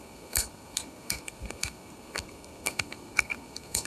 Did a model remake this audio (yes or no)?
yes